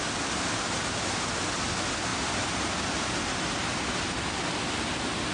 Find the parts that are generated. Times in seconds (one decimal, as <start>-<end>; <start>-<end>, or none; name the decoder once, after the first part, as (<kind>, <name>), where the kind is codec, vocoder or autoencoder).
none